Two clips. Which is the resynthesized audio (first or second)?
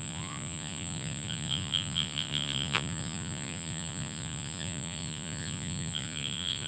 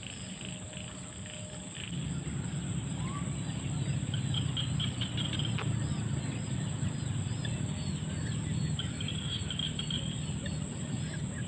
first